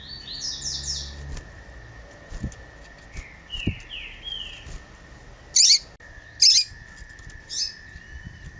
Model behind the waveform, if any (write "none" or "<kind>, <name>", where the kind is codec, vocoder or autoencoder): none